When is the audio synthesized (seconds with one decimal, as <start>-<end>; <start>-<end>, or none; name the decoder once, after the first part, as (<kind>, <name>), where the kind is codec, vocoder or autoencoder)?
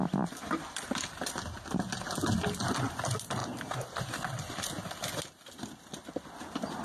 none